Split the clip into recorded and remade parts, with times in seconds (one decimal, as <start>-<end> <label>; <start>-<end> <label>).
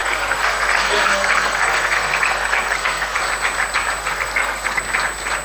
0.0-3.2 remade; 3.2-4.0 recorded; 4.0-4.8 remade; 4.8-5.4 recorded